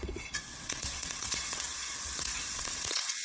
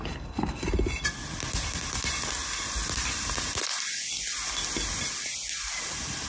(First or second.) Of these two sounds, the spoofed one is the first